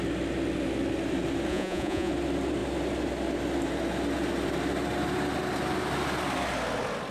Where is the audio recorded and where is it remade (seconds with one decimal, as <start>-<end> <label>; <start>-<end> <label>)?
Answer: 0.0-1.5 recorded; 1.5-2.1 remade; 2.1-7.1 recorded